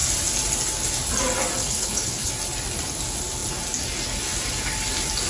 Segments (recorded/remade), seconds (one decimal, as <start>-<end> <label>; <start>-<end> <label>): 0.0-1.6 recorded; 1.6-2.3 remade; 2.3-5.3 recorded